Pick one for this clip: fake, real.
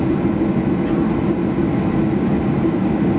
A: real